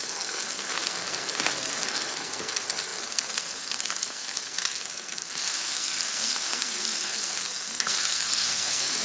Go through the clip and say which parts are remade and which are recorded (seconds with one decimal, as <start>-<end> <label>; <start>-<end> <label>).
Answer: 0.0-9.0 remade